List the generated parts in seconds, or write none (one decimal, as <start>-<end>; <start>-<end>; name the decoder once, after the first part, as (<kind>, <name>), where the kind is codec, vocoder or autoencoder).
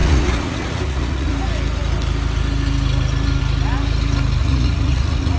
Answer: 0.0-1.3 (vocoder, Vocos); 4.4-5.4